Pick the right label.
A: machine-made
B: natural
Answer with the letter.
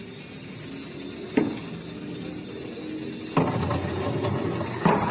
B